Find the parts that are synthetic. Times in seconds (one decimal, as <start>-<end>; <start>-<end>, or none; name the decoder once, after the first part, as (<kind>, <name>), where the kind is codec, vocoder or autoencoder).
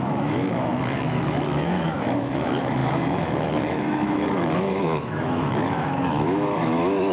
0.0-7.1 (autoencoder, DAC-VAE)